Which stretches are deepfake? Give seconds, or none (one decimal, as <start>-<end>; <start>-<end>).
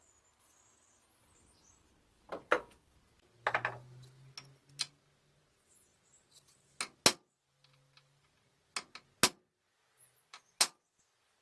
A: none